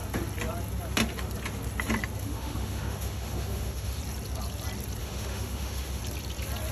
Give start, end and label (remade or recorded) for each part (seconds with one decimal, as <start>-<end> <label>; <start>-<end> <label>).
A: 0.0-2.2 recorded; 2.2-4.0 remade; 4.0-5.0 recorded; 5.0-6.0 remade; 6.0-6.7 recorded